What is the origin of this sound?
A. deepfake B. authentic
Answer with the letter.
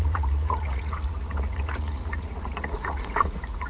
A